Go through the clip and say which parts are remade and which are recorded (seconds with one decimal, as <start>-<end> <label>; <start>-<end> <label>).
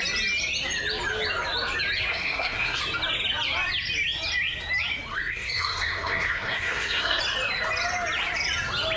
0.0-2.1 recorded; 2.1-2.8 remade; 2.8-5.1 recorded; 5.1-7.2 remade; 7.2-9.0 recorded